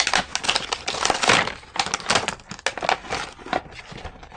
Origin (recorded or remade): recorded